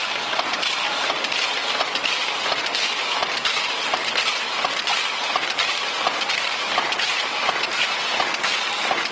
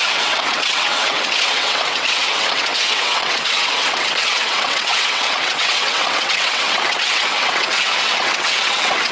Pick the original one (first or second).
first